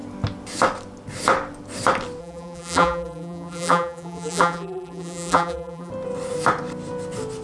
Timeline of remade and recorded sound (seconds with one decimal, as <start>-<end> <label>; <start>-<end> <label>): 0.0-2.2 recorded; 2.2-5.9 remade; 5.9-7.4 recorded